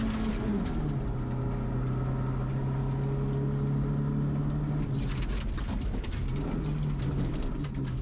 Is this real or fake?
real